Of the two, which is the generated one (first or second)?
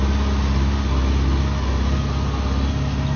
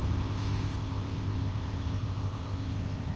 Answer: second